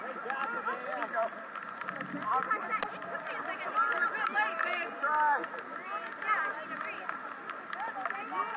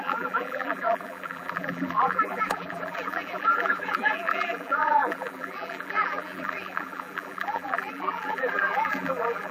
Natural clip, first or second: first